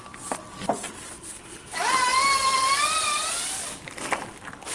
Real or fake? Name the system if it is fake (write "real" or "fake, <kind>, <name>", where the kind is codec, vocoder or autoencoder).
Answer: real